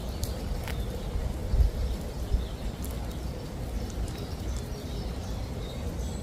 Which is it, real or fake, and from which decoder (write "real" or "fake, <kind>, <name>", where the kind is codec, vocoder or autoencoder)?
fake, vocoder, BigVGAN v2